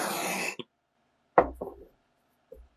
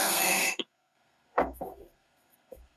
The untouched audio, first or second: first